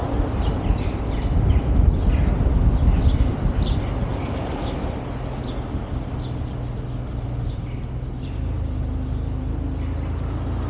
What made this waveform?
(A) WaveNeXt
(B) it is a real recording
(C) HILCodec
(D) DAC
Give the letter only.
B